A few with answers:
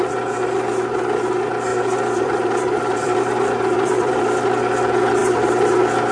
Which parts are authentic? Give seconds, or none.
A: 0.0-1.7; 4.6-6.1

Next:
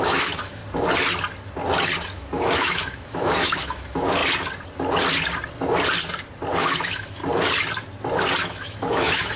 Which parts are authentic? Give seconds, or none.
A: 0.6-2.0; 4.2-6.6; 7.2-8.4

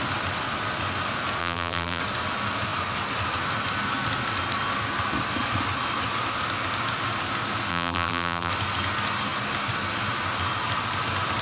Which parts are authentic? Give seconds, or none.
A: 0.0-1.4; 2.0-7.7; 8.5-11.4